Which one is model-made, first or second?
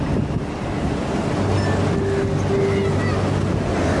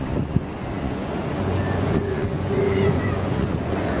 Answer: second